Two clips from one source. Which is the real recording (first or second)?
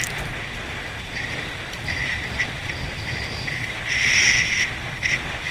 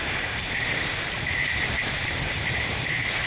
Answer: first